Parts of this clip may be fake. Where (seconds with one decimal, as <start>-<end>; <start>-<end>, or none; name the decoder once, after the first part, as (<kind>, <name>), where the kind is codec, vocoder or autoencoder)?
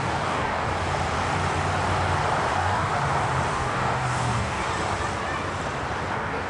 0.0-0.7 (codec, DAC); 2.5-2.9; 3.5-4.6; 6.1-6.5